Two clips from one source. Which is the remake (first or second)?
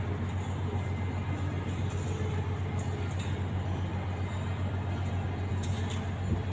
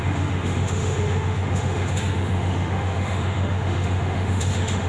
second